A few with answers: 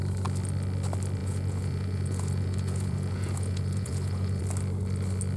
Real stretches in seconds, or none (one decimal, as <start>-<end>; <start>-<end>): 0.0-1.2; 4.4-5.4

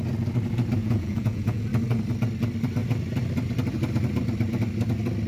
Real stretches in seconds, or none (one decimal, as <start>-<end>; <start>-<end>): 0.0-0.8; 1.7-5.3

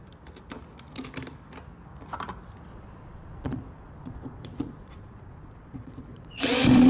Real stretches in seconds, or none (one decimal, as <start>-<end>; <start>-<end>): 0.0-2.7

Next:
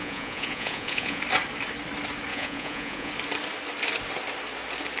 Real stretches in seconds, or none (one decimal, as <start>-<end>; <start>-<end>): 1.2-2.3; 3.1-5.0

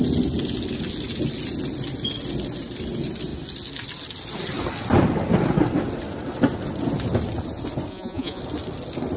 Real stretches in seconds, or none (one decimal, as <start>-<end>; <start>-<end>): 0.0-7.9; 8.4-9.2